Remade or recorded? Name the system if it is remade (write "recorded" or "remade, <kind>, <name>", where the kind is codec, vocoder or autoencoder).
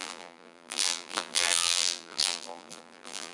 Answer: remade, vocoder, BigVGAN v2